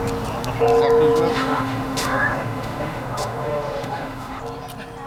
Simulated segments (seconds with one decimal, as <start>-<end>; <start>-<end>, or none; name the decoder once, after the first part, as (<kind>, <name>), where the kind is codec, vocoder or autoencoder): 1.3-4.4 (autoencoder, DAC-VAE)